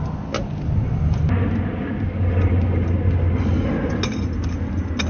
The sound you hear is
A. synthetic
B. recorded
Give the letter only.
B